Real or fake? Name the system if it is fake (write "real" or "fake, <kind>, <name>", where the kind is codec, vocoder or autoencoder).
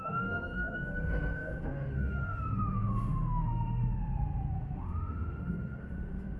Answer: fake, autoencoder, DAC-VAE